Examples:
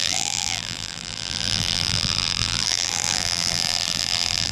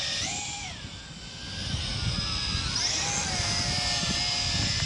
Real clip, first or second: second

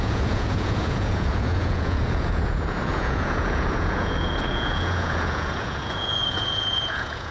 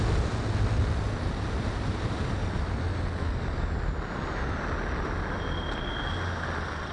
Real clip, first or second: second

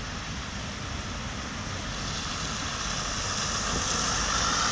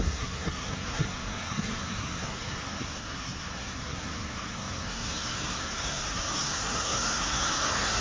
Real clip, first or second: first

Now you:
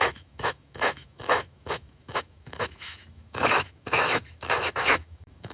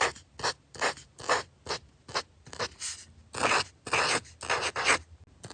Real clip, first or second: second